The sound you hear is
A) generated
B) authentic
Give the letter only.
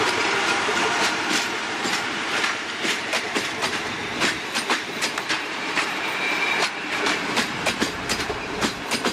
A